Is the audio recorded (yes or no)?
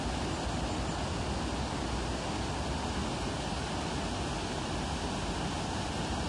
yes